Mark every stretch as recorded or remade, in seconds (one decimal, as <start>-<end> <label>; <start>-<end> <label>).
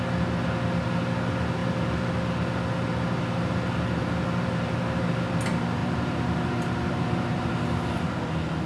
0.0-5.8 recorded; 5.8-7.6 remade; 7.6-8.7 recorded